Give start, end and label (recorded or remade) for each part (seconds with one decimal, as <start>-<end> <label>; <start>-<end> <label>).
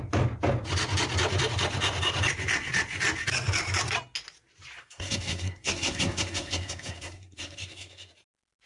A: 0.0-4.8 recorded; 4.8-8.1 remade; 8.1-8.7 recorded